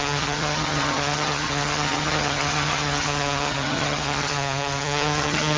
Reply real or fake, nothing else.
fake